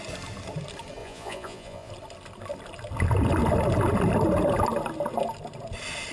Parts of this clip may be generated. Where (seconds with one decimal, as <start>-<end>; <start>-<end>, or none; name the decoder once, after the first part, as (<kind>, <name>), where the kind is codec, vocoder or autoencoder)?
1.0-1.9 (vocoder, Vocos)